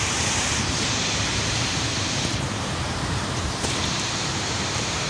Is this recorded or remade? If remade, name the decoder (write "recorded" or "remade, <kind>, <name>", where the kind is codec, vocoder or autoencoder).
remade, vocoder, BigVGAN v2